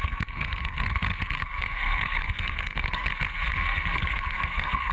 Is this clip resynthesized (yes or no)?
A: yes